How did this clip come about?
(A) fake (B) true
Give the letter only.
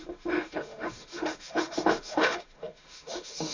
A